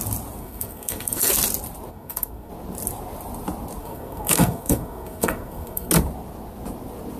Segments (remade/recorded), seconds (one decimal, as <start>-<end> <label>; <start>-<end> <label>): 0.0-0.4 recorded; 0.4-1.3 remade; 1.3-1.9 recorded; 1.9-2.5 remade; 2.5-3.8 recorded; 3.8-5.9 remade; 5.9-7.2 recorded